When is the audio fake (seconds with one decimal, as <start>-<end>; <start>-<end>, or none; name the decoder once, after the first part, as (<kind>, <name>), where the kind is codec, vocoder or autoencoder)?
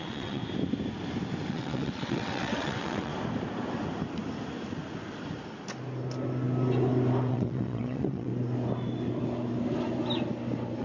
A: 0.0-0.4 (vocoder, WaveNeXt); 1.5-3.1; 7.3-8.3